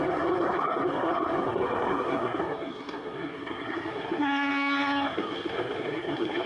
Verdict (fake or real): fake